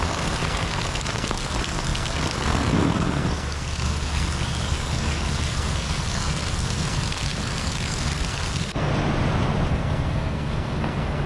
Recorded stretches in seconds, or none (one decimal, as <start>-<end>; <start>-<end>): 8.9-9.7